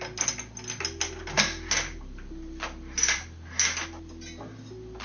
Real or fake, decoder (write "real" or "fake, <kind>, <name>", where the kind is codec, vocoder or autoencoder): real